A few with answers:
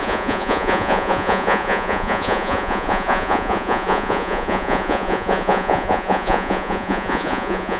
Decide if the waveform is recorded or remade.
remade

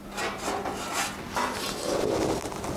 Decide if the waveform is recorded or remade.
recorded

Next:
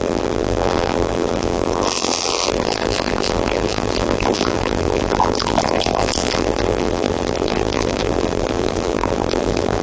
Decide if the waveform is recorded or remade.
remade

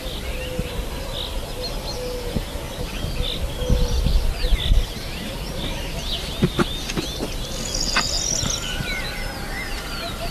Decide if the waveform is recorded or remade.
recorded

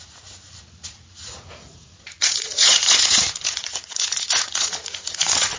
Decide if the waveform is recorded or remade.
remade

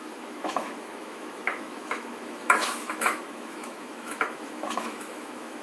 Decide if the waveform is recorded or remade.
remade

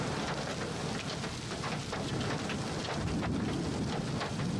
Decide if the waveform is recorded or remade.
recorded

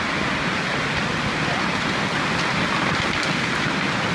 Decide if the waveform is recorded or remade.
recorded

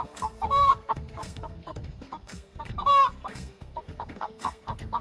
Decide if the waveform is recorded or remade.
remade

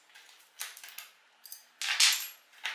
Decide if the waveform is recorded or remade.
recorded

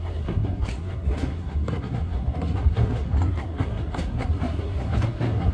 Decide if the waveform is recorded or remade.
remade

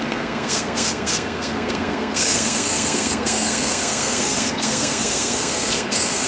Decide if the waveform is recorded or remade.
remade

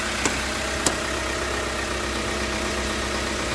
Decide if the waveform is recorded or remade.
recorded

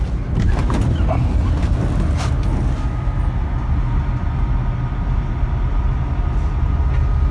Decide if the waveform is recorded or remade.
recorded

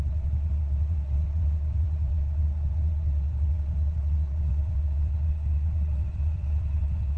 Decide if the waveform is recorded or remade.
remade